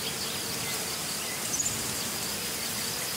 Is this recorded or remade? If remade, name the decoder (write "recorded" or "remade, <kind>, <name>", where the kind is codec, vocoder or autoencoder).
recorded